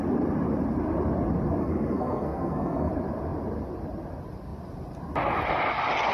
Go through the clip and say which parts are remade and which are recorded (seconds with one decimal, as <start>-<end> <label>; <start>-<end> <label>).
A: 0.0-1.6 recorded; 1.6-2.9 remade; 2.9-6.1 recorded